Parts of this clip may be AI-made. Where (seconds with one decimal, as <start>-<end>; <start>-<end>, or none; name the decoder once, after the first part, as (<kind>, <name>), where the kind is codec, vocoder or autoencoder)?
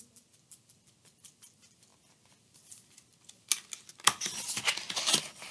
none